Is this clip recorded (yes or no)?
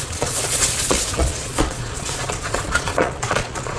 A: no